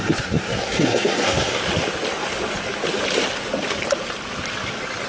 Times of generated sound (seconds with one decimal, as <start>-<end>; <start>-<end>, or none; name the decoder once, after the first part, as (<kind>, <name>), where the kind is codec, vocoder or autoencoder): 0.0-1.6 (codec, SNAC)